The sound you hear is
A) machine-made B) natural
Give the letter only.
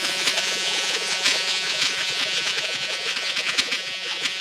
A